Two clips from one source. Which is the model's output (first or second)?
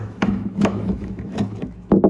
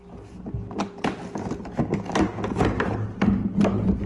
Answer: first